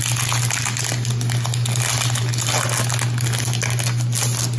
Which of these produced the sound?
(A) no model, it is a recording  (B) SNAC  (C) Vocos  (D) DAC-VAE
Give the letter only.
A